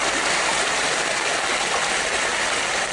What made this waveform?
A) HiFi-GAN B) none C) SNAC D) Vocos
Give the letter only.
B